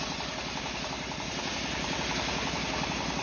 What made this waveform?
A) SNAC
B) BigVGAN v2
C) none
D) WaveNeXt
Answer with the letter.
C